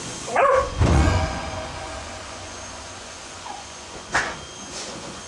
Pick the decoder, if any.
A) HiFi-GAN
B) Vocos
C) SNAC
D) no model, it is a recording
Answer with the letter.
B